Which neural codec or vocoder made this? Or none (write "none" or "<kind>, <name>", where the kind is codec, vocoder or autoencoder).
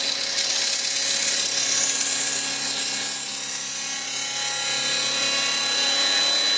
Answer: none